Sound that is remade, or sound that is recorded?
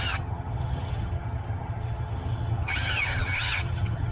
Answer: remade